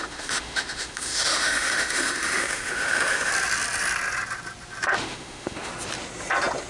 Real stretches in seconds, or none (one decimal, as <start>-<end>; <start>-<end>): 3.3-5.0; 5.7-6.7